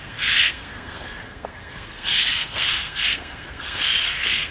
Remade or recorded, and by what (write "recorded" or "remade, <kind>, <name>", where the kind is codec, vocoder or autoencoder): remade, codec, SNAC